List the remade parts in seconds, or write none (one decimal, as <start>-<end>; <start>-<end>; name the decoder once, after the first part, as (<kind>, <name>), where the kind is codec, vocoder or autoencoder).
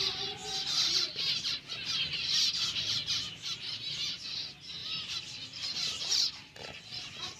4.8-6.0 (vocoder, BigVGAN v2)